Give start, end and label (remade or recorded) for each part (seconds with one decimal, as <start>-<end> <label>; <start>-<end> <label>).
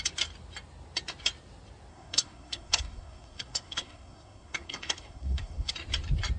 0.0-1.9 recorded; 1.9-5.7 remade; 5.7-6.4 recorded